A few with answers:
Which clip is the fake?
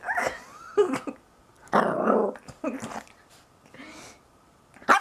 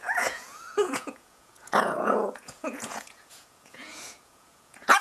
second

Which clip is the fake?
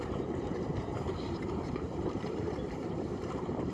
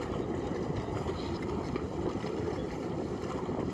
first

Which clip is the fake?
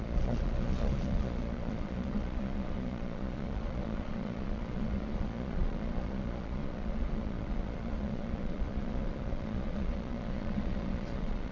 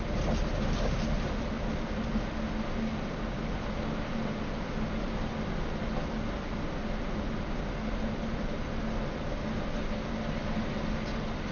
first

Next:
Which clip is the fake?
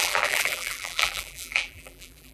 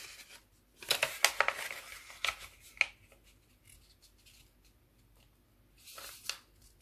first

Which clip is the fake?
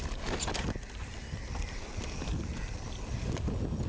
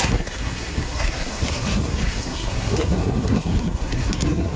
second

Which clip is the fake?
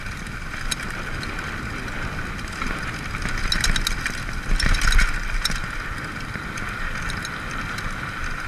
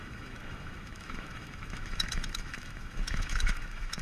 second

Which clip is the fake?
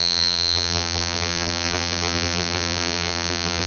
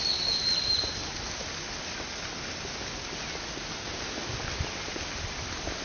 first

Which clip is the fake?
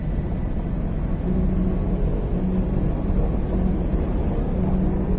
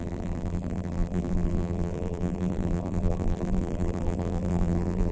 second